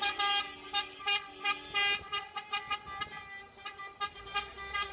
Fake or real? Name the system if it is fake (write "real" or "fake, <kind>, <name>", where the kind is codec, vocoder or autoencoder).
real